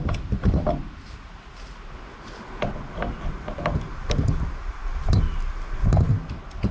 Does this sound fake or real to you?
real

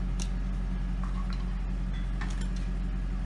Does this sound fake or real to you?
real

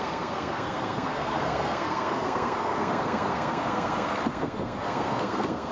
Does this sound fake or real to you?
fake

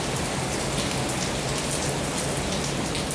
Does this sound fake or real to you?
real